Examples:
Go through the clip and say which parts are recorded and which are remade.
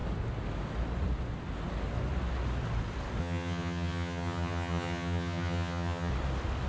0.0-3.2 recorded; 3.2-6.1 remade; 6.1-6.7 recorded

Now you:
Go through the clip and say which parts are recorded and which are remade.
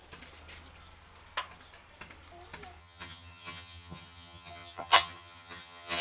0.0-2.8 recorded; 2.8-6.0 remade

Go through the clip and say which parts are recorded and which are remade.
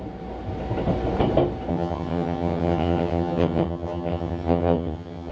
0.0-1.7 recorded; 1.7-5.3 remade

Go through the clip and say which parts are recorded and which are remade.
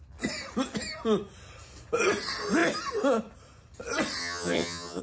0.0-4.2 recorded; 4.2-5.0 remade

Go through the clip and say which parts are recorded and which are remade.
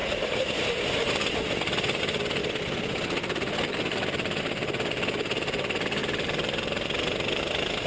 0.0-7.9 recorded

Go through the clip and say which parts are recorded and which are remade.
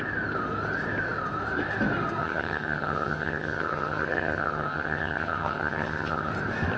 0.0-2.2 recorded; 2.2-6.3 remade; 6.3-6.8 recorded